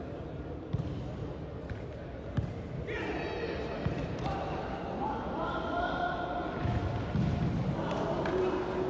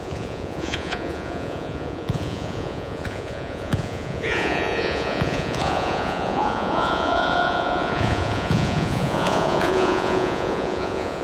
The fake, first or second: second